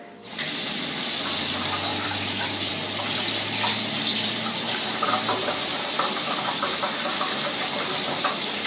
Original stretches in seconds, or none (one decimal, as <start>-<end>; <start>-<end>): 0.0-1.9; 2.7-4.1; 5.5-8.7